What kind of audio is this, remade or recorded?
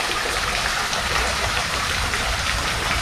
remade